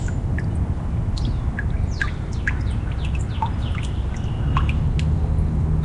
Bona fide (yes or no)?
yes